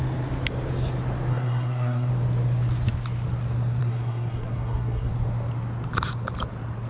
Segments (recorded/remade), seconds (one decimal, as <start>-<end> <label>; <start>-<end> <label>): 0.0-1.3 recorded; 1.3-2.1 remade; 2.1-3.8 recorded; 3.8-5.1 remade; 5.1-6.9 recorded